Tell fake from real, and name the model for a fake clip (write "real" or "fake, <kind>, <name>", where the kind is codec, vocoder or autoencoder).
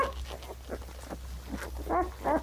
real